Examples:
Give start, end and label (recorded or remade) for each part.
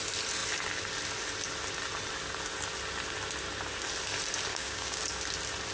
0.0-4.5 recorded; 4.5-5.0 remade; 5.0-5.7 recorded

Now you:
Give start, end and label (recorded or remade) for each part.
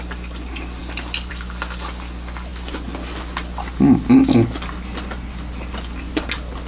0.0-6.7 recorded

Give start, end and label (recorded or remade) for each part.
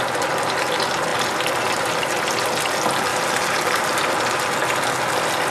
0.0-3.1 recorded; 3.1-4.4 remade; 4.4-5.5 recorded